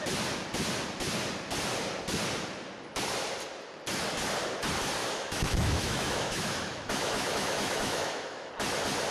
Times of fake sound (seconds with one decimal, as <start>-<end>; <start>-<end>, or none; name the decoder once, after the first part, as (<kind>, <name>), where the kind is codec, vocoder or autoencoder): 5.0-8.5 (autoencoder, DAC-VAE)